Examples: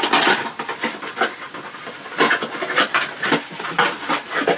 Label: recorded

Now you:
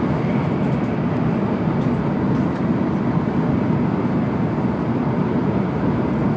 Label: recorded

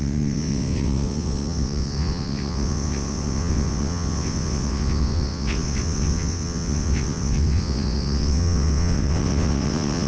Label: remade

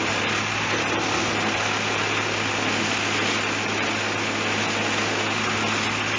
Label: recorded